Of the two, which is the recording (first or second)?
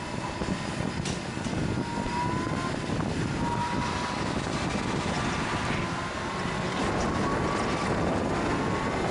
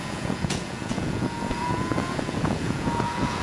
first